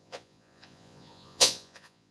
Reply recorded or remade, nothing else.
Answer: remade